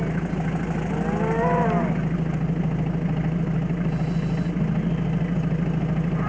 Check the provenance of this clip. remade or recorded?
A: recorded